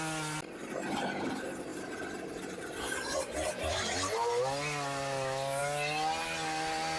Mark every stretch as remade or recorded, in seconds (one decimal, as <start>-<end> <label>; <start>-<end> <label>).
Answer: 0.0-1.7 recorded; 1.7-4.3 remade; 4.3-7.0 recorded